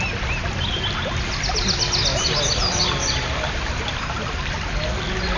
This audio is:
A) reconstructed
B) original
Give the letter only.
B